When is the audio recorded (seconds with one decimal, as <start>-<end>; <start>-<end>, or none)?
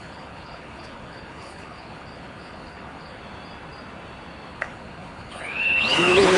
3.2-4.5